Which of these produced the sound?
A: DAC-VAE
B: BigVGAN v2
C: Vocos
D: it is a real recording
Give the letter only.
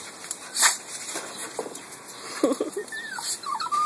B